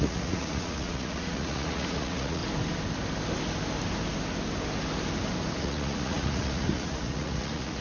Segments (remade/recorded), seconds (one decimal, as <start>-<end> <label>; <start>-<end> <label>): 0.0-2.4 remade; 2.4-5.6 recorded; 5.6-7.8 remade